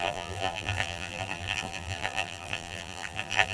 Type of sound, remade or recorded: remade